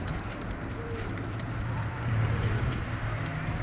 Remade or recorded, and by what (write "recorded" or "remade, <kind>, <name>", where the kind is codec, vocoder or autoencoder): recorded